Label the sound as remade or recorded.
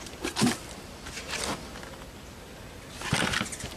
recorded